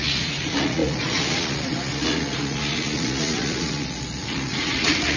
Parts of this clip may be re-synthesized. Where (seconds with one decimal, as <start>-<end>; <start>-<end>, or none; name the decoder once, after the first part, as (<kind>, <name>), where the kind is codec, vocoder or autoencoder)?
0.0-5.2 (vocoder, Vocos)